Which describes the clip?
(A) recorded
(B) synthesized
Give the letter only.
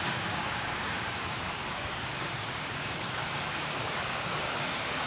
B